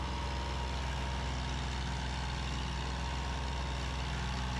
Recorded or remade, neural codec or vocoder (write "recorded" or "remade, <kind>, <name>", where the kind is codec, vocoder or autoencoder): recorded